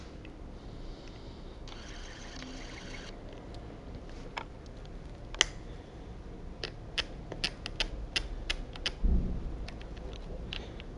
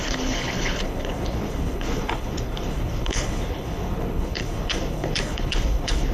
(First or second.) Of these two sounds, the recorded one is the first